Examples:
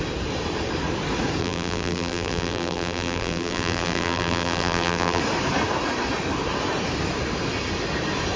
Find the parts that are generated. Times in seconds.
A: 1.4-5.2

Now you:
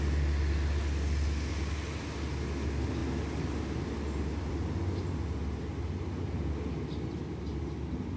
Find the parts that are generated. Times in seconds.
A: none

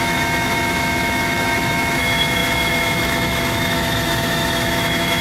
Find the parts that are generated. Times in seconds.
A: 0.0-5.2

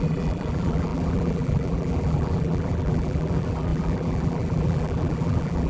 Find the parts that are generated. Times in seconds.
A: 0.0-5.7

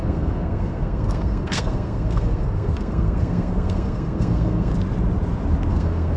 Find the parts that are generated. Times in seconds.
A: 0.0-4.7; 5.7-6.2

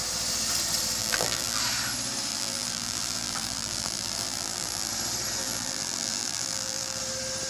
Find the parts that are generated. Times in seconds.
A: 1.0-1.6; 2.3-4.9; 5.4-7.0

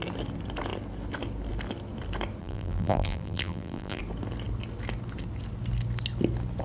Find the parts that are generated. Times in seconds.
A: 2.4-4.0